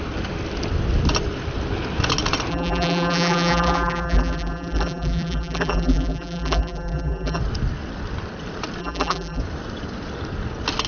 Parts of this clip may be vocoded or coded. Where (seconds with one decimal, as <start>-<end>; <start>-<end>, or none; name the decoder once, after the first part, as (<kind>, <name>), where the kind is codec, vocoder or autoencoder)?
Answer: 2.5-7.4 (vocoder, BigVGAN v2); 8.8-9.4